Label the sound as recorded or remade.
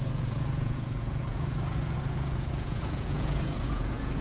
remade